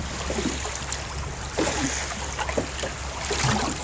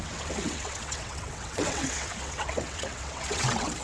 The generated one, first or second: second